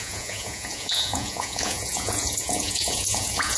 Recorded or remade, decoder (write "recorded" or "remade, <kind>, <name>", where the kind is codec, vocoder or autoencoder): remade, vocoder, Vocos